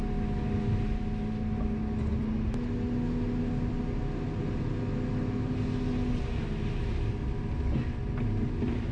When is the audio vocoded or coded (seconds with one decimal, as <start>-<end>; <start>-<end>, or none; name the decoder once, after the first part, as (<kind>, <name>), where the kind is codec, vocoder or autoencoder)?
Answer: none